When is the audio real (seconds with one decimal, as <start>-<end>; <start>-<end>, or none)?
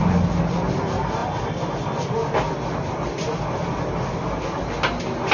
0.0-5.3